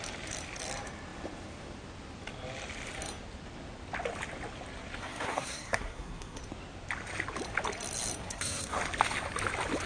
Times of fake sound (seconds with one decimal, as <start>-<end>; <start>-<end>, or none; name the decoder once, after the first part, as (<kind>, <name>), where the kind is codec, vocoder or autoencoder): 5.0-6.4 (codec, SNAC); 8.2-8.8

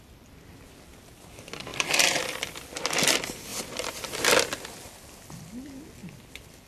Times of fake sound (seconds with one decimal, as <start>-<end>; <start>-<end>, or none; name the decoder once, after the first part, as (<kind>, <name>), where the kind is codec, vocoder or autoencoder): 1.7-2.2 (vocoder, BigVGAN v2); 3.5-4.3; 6.0-6.7

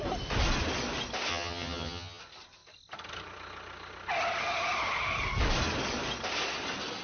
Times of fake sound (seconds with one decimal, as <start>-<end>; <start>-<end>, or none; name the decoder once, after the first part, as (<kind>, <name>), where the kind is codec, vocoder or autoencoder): 1.3-2.2 (vocoder, HiFi-GAN)

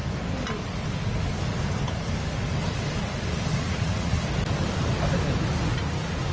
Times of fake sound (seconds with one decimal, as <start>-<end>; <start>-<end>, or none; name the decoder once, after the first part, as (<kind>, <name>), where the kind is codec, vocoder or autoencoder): 3.5-4.2 (vocoder, Vocos)

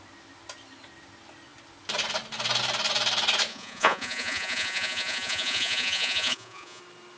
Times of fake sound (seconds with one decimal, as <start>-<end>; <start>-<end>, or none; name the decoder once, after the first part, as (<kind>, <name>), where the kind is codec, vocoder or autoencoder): 3.5-6.8 (vocoder, Vocos)

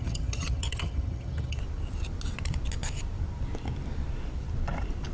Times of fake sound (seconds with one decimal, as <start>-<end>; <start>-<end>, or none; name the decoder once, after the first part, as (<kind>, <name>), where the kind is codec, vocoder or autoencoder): 0.0-1.6 (vocoder, HiFi-GAN)